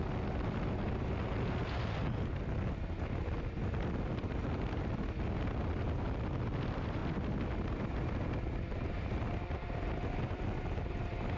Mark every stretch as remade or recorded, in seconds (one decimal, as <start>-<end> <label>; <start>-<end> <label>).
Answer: 0.0-11.4 recorded